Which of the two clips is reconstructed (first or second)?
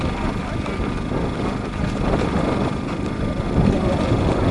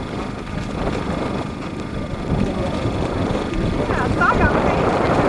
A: second